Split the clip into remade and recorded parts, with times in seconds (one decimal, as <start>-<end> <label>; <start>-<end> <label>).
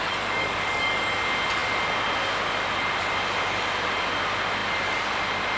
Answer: 0.0-1.0 remade; 1.0-5.6 recorded